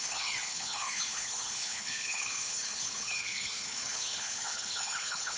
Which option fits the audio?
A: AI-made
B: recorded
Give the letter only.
A